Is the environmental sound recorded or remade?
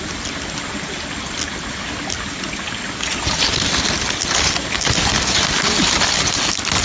recorded